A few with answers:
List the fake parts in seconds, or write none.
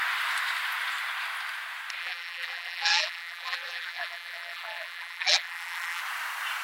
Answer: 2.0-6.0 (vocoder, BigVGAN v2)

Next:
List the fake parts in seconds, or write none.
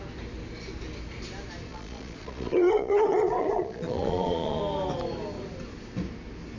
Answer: 1.7-4.6 (vocoder, Vocos)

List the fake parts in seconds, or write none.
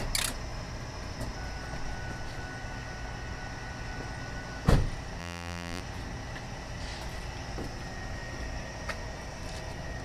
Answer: 5.2-5.8 (vocoder, BigVGAN v2)